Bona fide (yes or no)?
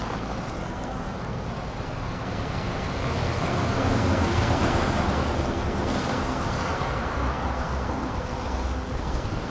no